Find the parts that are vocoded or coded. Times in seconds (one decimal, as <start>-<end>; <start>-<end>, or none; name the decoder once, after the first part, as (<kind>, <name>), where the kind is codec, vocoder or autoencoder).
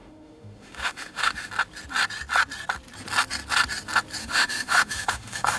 0.0-1.5 (autoencoder, DAC-VAE); 4.2-5.6